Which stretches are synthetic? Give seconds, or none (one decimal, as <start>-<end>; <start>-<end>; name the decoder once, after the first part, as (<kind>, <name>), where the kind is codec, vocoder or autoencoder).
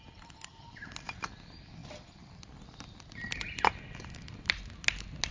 none